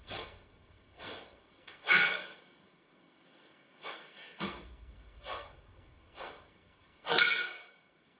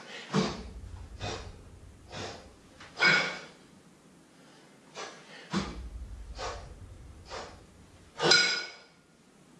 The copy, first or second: first